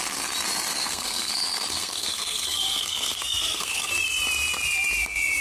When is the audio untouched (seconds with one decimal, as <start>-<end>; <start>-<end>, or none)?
0.0-0.7; 3.9-5.4